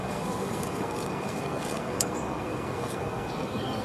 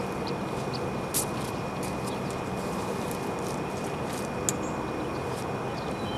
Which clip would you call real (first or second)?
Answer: second